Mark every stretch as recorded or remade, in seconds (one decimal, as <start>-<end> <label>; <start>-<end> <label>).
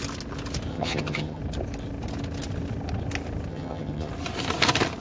0.0-0.7 recorded; 0.7-1.4 remade; 1.4-3.5 recorded; 3.5-4.1 remade; 4.1-5.0 recorded